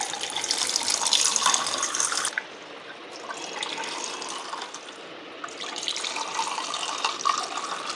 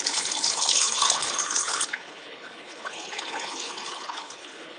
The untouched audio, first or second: first